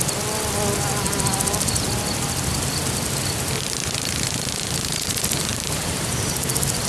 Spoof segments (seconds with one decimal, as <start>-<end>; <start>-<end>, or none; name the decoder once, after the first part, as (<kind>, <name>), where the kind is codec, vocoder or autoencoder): 5.5-6.5 (vocoder, BigVGAN v2)